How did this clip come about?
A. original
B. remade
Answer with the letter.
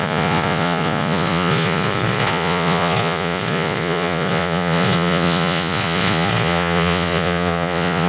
B